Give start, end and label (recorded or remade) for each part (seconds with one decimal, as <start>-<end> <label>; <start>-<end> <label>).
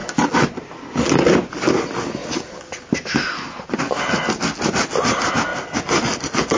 0.0-6.6 recorded